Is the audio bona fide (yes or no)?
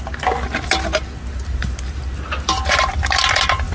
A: yes